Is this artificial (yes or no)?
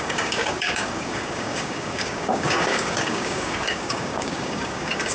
yes